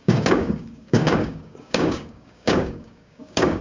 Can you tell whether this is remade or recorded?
remade